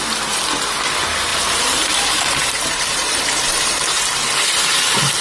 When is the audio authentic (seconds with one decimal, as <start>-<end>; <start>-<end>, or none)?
0.0-1.3; 4.0-5.2